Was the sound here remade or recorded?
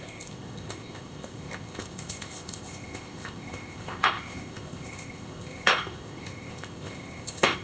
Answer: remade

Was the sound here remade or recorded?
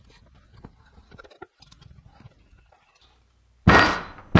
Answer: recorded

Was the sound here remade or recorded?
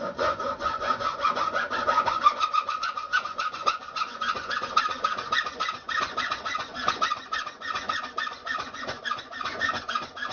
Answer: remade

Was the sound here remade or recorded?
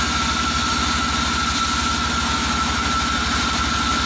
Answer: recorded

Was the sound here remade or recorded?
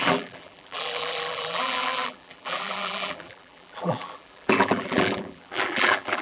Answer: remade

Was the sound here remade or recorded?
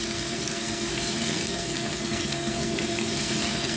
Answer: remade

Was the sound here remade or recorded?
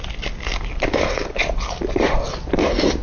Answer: recorded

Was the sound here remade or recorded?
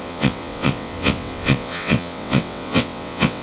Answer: remade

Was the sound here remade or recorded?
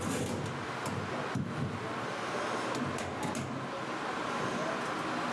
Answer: recorded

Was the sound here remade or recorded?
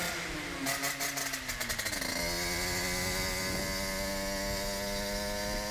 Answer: recorded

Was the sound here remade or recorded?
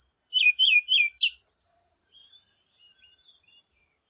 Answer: remade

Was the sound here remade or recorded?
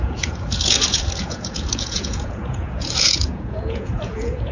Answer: remade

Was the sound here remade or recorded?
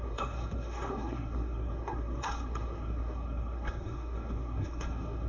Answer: remade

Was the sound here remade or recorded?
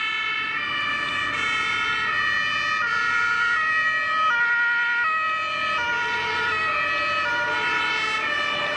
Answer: recorded